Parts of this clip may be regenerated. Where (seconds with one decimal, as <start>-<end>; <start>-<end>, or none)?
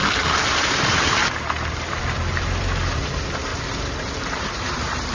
0.6-1.2; 3.0-5.1